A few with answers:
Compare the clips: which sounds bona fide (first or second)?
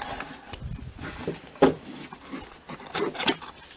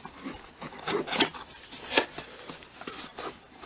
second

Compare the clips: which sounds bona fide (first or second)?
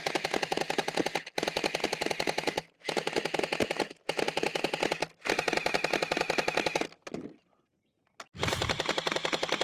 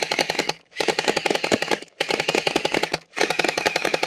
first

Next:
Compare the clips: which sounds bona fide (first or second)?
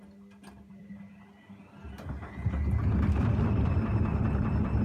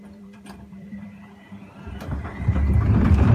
first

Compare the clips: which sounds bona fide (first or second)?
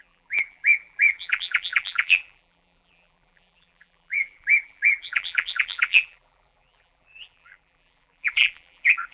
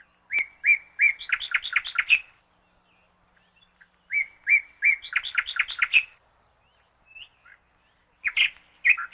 second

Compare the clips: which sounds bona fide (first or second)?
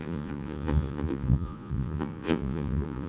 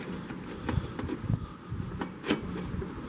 second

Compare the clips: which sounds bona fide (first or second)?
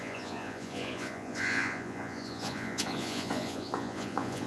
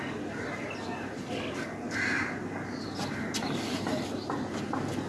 second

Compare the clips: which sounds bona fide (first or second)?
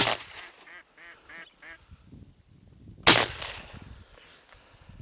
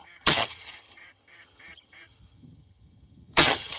first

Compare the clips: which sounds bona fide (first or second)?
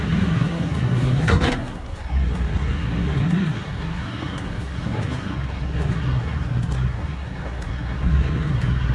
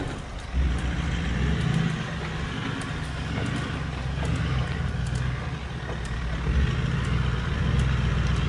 second